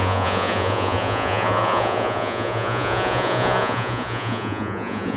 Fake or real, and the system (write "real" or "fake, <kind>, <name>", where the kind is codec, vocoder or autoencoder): fake, vocoder, Vocos